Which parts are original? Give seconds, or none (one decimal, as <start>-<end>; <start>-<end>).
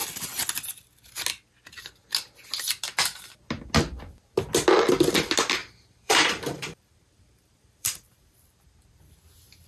0.0-5.6; 8.5-9.7